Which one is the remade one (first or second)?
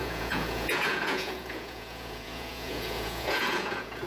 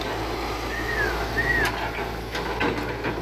first